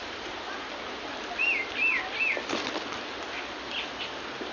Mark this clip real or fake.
real